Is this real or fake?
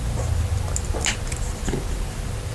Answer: real